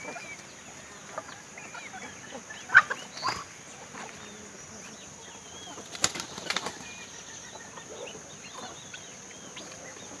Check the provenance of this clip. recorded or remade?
recorded